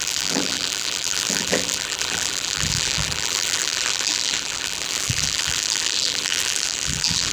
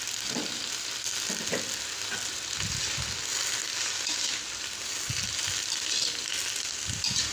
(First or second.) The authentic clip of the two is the second